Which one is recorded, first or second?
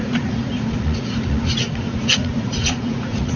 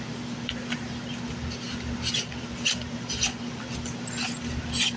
second